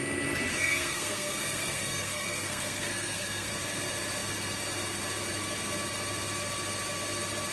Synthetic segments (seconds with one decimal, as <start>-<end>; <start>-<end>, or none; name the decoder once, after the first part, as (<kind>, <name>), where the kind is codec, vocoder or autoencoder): 0.5-3.5 (codec, SNAC)